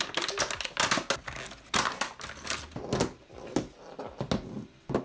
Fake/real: real